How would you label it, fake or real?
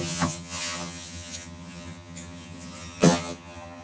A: fake